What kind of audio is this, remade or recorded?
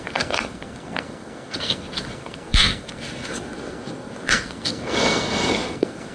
remade